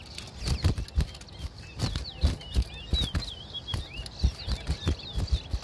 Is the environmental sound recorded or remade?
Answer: recorded